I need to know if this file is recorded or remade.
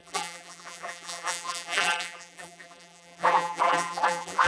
remade